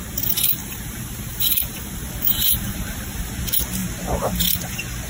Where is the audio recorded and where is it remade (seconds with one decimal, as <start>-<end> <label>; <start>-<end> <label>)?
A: 0.0-0.6 recorded; 0.6-3.3 remade; 3.3-5.1 recorded